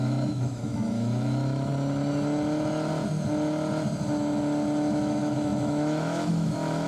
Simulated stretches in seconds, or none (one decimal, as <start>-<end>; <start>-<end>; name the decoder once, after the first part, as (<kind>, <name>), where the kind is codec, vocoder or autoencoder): 0.0-1.7 (autoencoder, DAC-VAE); 4.9-6.9